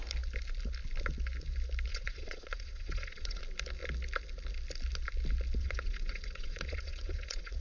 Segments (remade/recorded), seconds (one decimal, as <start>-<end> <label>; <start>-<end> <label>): 0.0-1.9 recorded; 1.9-3.4 remade; 3.4-5.6 recorded; 5.6-7.6 remade